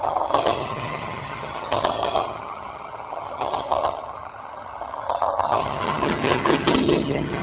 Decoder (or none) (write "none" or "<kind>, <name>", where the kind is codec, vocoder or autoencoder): vocoder, HiFi-GAN